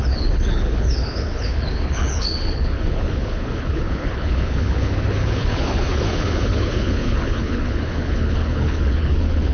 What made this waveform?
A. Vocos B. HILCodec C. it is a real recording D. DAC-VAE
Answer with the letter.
B